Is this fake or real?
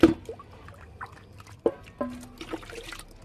real